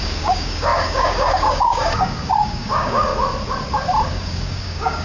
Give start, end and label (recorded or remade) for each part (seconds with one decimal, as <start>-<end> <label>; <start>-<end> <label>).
0.0-3.1 remade; 3.1-4.1 recorded; 4.1-5.0 remade